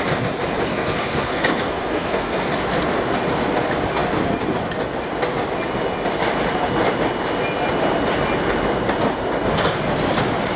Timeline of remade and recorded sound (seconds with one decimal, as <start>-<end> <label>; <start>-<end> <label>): 0.0-0.7 recorded; 0.7-2.5 remade; 2.5-10.6 recorded